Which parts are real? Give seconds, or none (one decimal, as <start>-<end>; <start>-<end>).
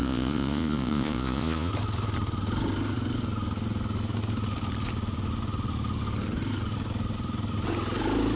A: 1.7-8.4